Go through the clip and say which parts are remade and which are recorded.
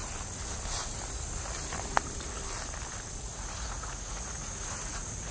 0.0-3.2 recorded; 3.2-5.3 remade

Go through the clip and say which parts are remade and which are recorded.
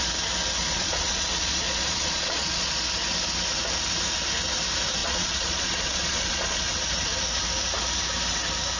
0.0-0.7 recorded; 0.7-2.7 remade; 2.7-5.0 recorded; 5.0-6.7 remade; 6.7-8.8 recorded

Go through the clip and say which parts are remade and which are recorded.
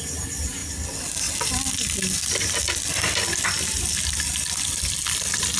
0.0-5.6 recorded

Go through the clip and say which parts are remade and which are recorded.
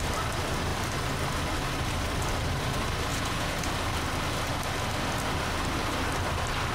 0.0-3.1 recorded; 3.1-3.7 remade; 3.7-6.7 recorded